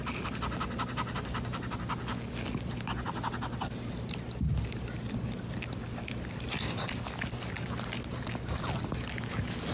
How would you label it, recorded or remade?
recorded